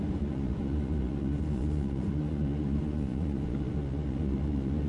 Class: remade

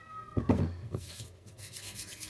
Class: remade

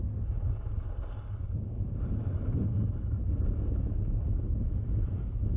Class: recorded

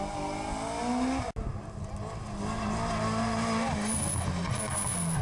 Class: recorded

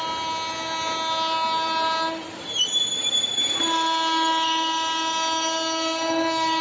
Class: recorded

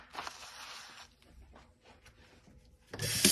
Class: recorded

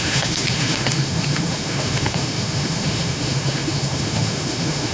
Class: remade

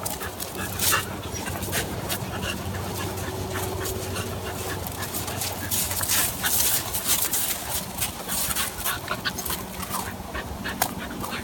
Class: recorded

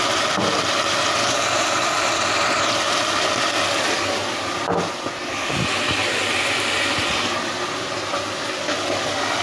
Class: recorded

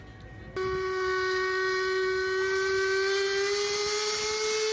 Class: recorded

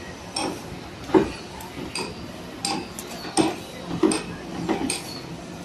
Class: recorded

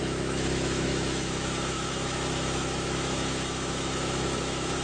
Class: remade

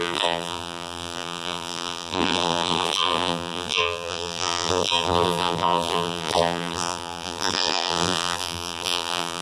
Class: remade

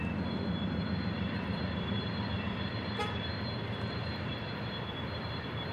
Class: remade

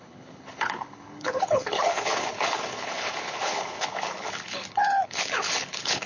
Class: remade